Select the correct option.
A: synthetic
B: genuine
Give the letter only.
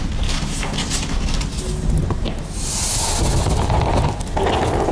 B